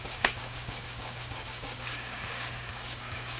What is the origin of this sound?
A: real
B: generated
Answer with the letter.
B